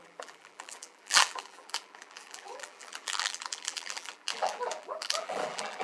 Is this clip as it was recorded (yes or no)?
no